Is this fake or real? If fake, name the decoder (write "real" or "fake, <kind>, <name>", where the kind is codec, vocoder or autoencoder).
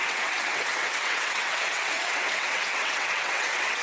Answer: fake, vocoder, WaveNeXt